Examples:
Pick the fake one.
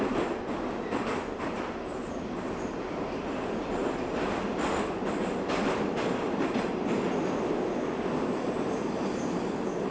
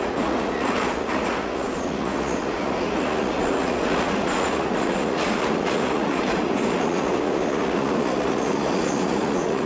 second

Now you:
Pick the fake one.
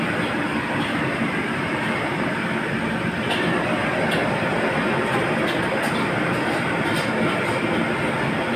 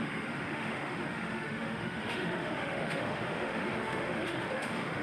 second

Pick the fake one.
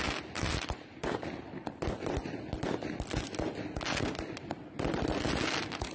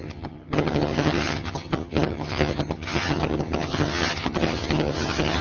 second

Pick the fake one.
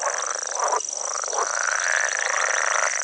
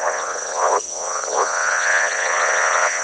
second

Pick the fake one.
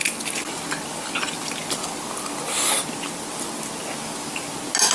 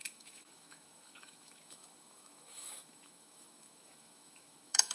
second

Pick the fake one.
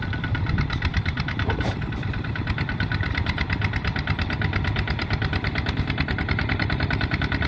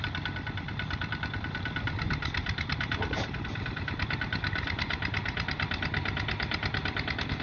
first